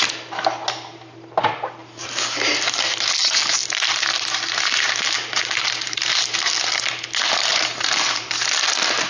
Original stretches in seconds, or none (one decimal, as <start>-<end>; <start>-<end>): 0.0-1.8; 2.5-3.6; 6.3-7.5; 8.2-9.1